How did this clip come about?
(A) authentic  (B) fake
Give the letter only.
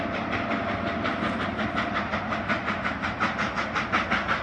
A